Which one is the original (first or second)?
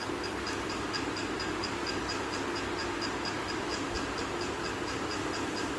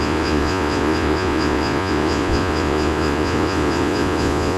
first